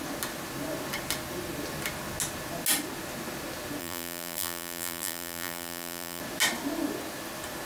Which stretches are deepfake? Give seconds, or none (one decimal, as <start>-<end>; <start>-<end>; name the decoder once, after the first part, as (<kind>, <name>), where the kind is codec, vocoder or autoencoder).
3.8-6.2 (vocoder, BigVGAN v2)